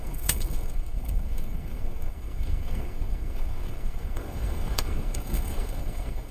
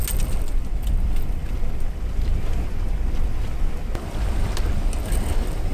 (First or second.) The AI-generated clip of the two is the first